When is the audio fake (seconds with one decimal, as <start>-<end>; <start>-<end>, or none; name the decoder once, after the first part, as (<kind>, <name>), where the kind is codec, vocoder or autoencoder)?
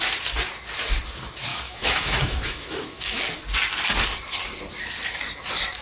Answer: 1.5-3.2 (autoencoder, DAC-VAE)